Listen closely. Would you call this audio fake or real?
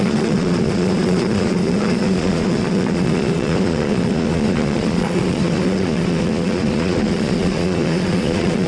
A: fake